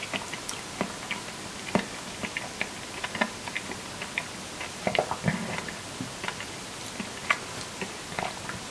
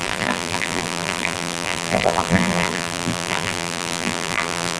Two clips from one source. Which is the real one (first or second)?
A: first